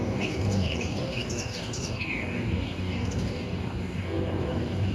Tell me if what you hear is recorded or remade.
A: remade